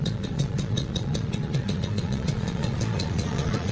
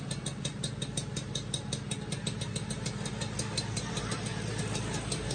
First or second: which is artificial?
first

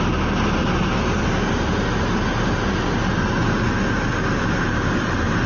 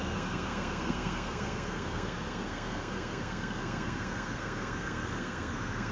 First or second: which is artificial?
second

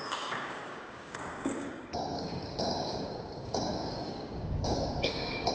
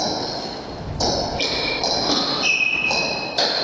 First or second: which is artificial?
first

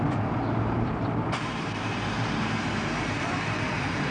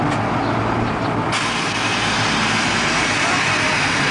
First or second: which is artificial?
first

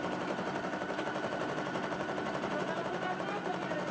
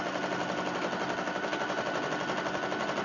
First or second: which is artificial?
first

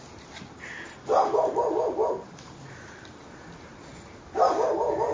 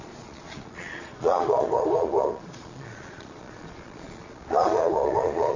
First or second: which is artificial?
second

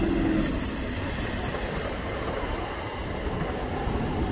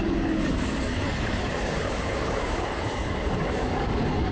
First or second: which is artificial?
second